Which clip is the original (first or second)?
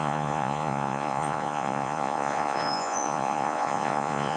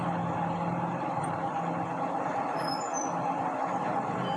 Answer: second